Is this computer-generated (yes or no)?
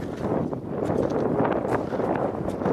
no